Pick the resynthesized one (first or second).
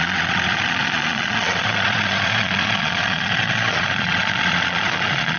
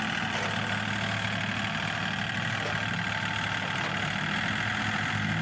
first